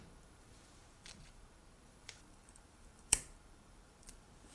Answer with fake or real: fake